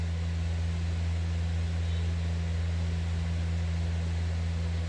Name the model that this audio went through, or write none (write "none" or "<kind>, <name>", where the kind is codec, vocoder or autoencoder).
none